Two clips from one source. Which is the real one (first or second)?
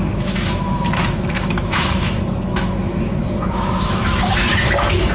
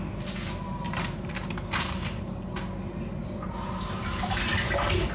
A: second